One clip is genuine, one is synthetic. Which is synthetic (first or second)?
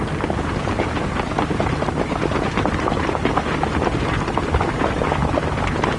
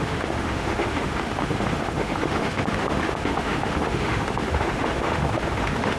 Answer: second